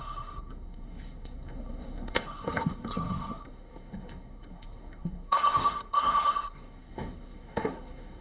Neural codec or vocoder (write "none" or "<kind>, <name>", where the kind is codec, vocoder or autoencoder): codec, SNAC